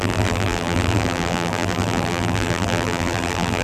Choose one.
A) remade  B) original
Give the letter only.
A